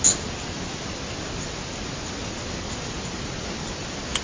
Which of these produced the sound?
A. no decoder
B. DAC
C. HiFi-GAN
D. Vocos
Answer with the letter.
A